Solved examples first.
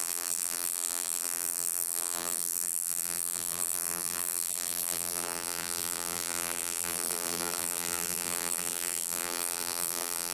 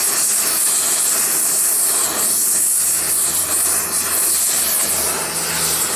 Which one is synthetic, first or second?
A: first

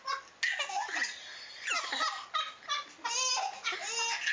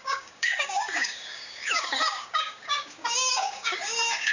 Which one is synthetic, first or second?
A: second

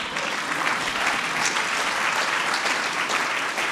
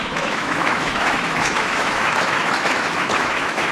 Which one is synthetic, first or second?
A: second